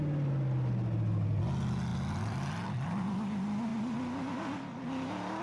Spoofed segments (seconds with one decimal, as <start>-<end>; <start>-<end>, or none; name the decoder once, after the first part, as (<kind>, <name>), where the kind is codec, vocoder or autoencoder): none